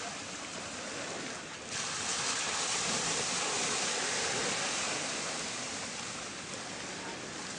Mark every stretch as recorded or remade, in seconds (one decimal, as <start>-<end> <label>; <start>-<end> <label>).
0.0-2.1 recorded; 2.1-4.4 remade; 4.4-7.6 recorded